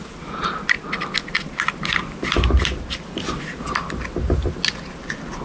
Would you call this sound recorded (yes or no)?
yes